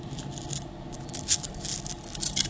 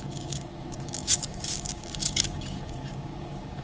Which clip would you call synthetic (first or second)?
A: second